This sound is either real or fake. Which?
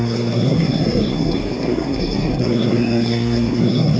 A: fake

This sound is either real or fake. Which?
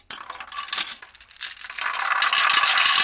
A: real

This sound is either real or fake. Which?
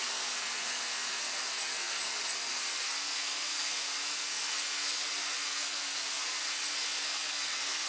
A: fake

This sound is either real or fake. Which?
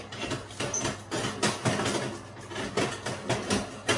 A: real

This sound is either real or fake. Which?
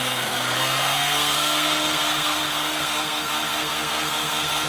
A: fake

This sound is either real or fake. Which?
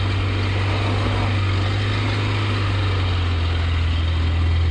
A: real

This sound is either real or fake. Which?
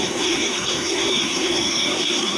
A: fake